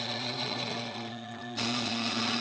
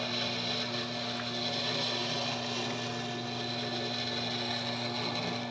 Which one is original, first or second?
second